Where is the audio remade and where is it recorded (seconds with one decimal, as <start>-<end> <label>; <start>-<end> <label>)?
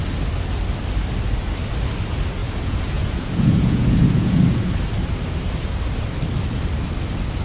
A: 0.0-2.4 recorded; 2.4-4.4 remade; 4.4-7.4 recorded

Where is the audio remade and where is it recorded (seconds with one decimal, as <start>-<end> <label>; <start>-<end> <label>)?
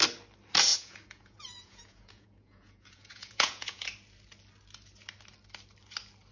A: 0.0-0.7 recorded; 0.7-3.8 remade; 3.8-6.3 recorded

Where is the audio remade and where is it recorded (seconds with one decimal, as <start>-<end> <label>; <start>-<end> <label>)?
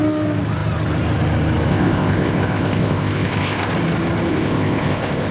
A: 0.0-1.7 recorded; 1.7-3.7 remade; 3.7-4.3 recorded; 4.3-5.3 remade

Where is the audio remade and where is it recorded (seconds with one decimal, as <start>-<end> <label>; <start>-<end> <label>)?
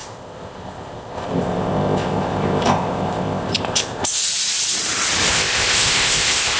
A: 0.0-4.2 remade; 4.2-5.3 recorded; 5.3-6.6 remade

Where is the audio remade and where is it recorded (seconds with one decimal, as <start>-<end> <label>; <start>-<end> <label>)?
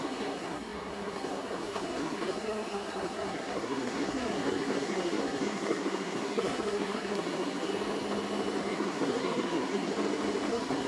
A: 0.0-7.7 remade; 7.7-8.6 recorded; 8.6-9.9 remade; 9.9-10.5 recorded; 10.5-10.9 remade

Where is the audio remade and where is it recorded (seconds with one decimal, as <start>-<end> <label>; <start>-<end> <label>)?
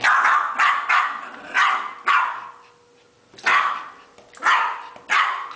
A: 0.0-5.6 recorded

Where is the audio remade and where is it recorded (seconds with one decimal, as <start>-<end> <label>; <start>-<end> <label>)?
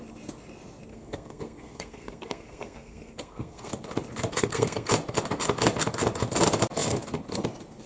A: 0.0-0.9 recorded; 0.9-3.7 remade; 3.7-4.3 recorded; 4.3-4.9 remade; 4.9-7.9 recorded